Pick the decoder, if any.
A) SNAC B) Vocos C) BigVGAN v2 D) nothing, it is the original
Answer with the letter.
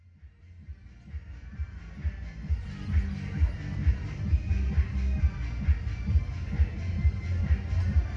D